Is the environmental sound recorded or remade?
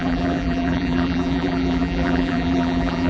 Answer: remade